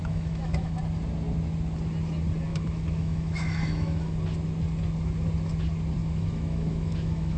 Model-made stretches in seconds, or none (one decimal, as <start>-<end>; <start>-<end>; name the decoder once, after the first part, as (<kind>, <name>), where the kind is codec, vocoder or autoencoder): 0.0-0.8 (autoencoder, DAC-VAE); 2.5-4.2; 6.0-7.4